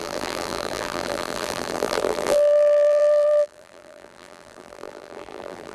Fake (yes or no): yes